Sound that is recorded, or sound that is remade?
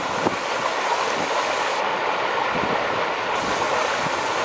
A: recorded